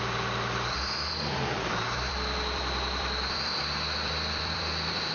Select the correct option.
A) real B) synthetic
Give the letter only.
B